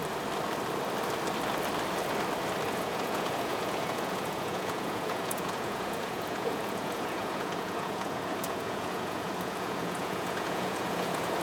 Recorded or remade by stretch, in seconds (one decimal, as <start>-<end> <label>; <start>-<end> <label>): 0.0-2.7 recorded; 2.7-11.4 remade